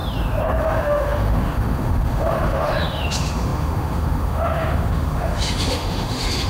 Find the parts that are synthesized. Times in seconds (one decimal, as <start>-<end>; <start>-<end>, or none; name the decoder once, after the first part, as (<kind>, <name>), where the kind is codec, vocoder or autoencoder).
0.6-6.5 (autoencoder, DAC-VAE)